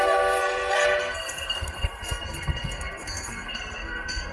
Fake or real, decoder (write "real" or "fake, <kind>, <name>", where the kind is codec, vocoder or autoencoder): fake, codec, SNAC